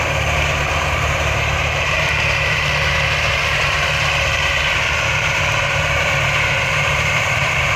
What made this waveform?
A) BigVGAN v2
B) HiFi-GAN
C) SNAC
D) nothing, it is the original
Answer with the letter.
A